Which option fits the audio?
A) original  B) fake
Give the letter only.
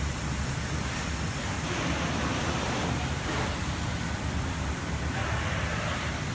A